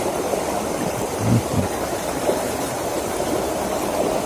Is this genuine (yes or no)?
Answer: no